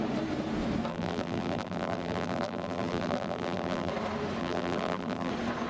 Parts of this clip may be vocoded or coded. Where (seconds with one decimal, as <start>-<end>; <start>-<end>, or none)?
0.9-3.9; 4.4-5.3